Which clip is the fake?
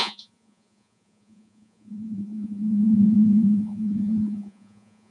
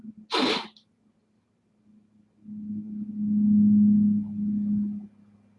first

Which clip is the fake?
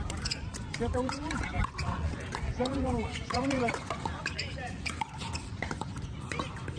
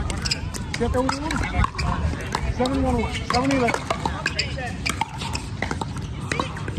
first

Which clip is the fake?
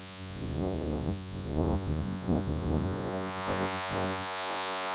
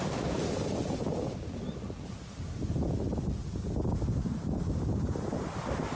first